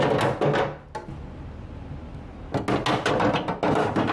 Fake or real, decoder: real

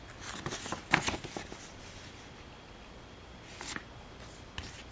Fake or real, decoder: real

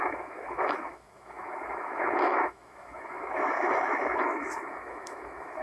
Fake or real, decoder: fake, autoencoder, DAC-VAE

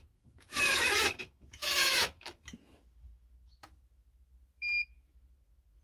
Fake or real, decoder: fake, autoencoder, DAC-VAE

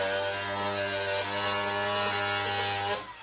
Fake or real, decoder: real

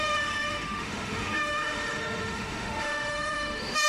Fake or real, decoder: fake, autoencoder, DAC-VAE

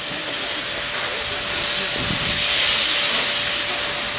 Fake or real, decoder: real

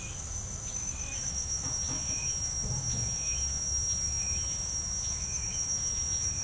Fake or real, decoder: fake, autoencoder, DAC-VAE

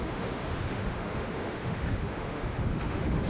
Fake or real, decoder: fake, autoencoder, DAC-VAE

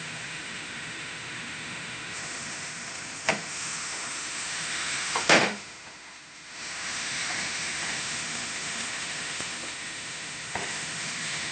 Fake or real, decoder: fake, autoencoder, DAC-VAE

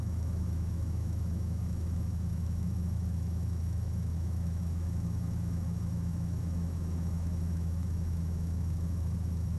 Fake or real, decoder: fake, autoencoder, DAC-VAE